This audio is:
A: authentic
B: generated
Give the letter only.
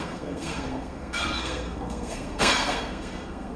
B